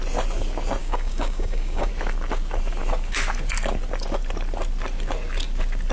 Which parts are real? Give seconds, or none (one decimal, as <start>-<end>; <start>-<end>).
0.0-0.8; 1.9-5.9